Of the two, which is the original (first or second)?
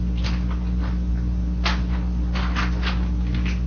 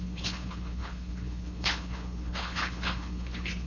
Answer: first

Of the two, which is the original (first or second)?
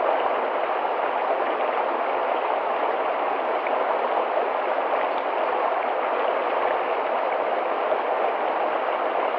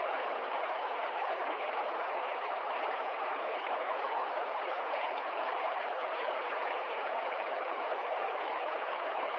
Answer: first